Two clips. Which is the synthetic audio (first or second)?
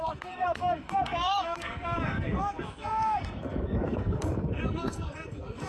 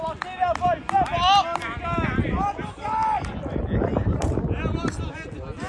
first